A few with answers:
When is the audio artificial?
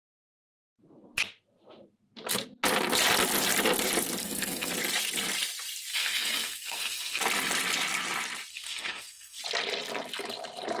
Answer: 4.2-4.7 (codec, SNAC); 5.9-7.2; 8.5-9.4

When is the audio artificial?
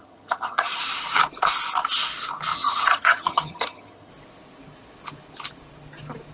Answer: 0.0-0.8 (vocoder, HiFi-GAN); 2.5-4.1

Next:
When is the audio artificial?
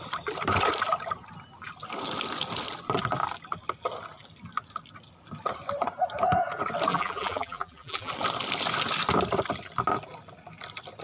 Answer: 6.9-8.1 (vocoder, BigVGAN v2)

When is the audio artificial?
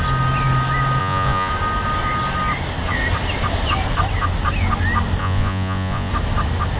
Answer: 1.0-1.5 (vocoder, Vocos); 5.2-6.1